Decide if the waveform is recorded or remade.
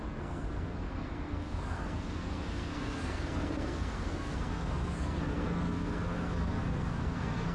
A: remade